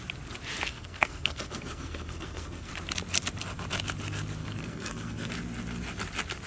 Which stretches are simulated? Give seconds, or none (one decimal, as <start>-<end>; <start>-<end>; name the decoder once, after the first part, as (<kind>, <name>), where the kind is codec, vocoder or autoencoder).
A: 0.7-2.7 (codec, SNAC); 4.4-5.3